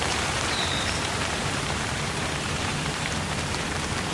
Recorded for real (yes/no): no